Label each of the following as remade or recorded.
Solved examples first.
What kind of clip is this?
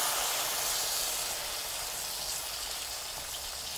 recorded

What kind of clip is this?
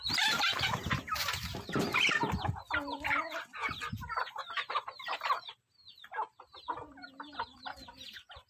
recorded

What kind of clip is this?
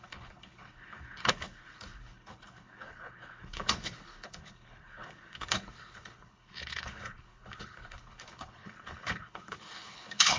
remade